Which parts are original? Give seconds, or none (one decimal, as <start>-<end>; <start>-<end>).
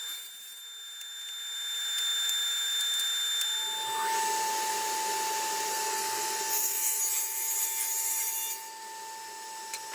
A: 0.0-5.7; 7.0-9.9